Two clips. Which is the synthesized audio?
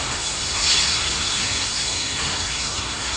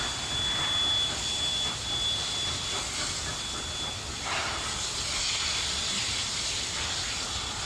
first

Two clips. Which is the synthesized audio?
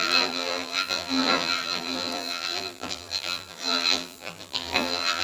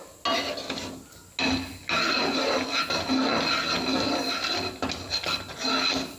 first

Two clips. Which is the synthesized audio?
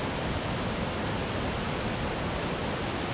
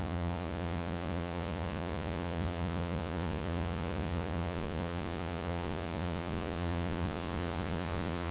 second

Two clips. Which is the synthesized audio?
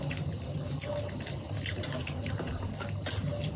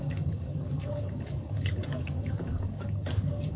second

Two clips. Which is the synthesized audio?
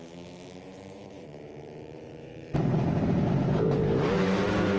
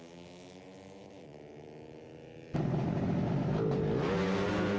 first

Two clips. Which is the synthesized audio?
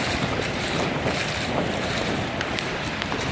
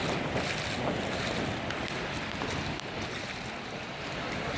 first